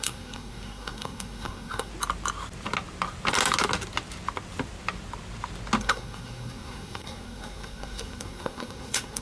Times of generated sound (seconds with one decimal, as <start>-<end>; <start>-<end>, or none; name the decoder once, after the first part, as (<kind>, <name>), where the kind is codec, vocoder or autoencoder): 0.0-1.9 (codec, SNAC); 5.8-9.2